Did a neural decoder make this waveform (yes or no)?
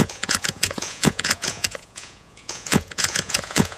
yes